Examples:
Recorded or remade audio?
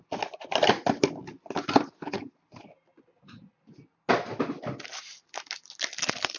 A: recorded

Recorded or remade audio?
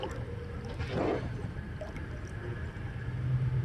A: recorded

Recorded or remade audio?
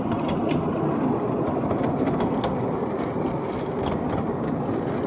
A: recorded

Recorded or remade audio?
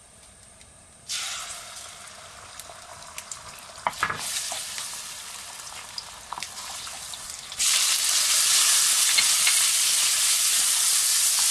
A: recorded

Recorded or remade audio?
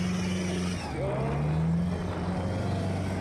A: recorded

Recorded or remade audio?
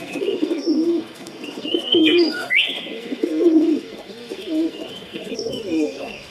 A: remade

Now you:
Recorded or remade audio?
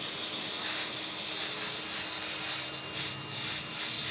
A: recorded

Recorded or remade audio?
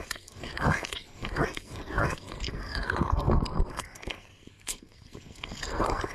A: remade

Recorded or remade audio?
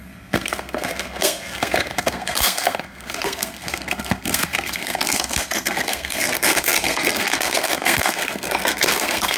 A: remade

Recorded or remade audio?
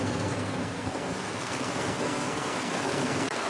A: remade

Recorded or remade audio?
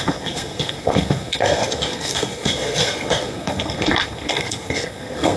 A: remade